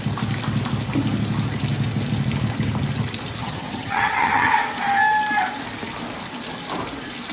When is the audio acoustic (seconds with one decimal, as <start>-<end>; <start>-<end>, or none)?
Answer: 0.0-3.4; 4.5-7.3